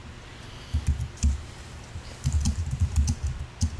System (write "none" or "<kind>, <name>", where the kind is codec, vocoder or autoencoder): none